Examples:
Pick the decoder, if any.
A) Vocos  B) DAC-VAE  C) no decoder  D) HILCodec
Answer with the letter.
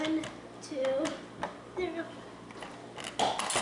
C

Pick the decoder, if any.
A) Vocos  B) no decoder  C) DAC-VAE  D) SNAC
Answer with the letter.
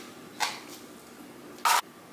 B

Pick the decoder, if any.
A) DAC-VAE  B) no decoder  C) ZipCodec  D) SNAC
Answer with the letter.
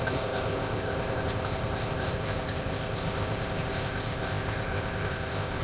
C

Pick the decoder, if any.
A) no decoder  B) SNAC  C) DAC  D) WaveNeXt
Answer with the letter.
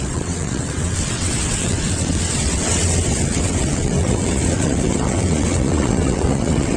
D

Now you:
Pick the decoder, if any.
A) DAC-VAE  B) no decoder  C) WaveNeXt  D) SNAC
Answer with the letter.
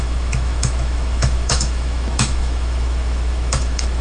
A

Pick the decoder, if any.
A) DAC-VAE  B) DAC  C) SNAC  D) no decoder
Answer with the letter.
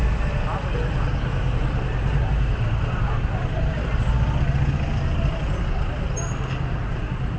D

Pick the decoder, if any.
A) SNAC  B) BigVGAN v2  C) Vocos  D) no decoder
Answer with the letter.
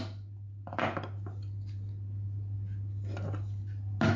D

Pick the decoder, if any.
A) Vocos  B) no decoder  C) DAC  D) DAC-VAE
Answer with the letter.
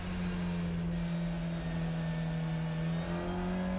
B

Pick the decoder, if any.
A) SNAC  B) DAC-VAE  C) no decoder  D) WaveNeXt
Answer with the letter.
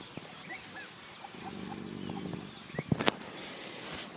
C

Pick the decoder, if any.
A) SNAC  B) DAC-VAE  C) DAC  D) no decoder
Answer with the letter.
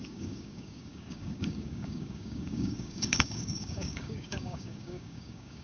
C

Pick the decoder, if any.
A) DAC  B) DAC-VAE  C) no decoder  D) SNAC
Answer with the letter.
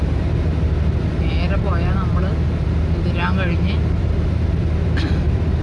C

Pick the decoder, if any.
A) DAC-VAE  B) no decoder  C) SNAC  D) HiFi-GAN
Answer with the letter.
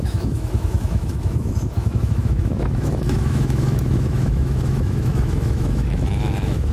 A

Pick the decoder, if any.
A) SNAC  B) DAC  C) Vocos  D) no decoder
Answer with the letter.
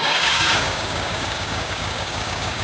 B